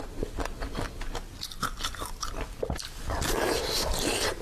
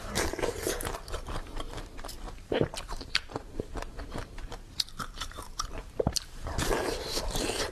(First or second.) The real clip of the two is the first